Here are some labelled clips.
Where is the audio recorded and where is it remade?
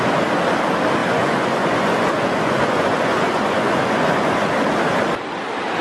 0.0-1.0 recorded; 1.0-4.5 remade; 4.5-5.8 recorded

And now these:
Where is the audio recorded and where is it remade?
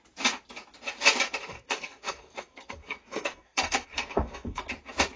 0.0-1.5 recorded; 1.5-4.6 remade; 4.6-5.2 recorded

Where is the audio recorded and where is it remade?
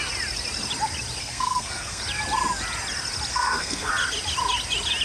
0.0-1.2 recorded; 1.2-2.0 remade; 2.0-3.3 recorded; 3.3-3.9 remade; 3.9-5.0 recorded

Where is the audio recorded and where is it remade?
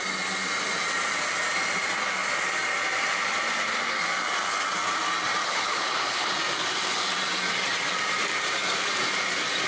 0.0-5.4 recorded; 5.4-6.3 remade; 6.3-9.7 recorded